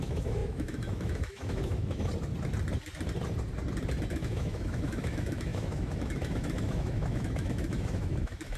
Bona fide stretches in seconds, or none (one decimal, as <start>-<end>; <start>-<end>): 2.1-4.1